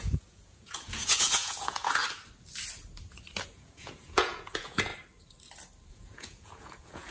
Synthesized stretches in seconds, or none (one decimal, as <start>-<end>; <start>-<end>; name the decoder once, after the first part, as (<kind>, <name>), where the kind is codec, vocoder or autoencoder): 0.0-2.0 (vocoder, Vocos); 3.4-4.9; 5.9-7.1